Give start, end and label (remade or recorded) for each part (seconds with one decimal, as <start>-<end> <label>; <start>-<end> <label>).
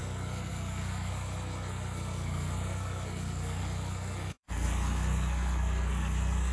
0.0-6.5 remade